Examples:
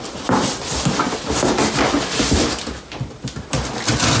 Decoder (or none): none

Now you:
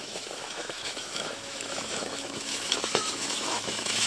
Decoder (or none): autoencoder, DAC-VAE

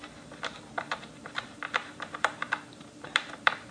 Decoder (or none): vocoder, BigVGAN v2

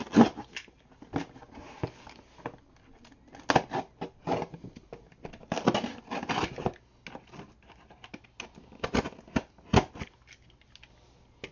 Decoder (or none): none